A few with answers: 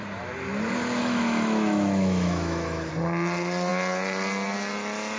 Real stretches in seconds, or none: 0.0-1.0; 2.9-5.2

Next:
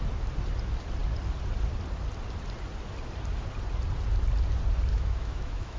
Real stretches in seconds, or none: 0.0-4.9